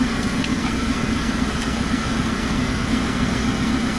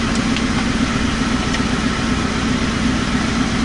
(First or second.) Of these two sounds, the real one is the second